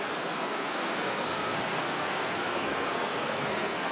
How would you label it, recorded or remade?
remade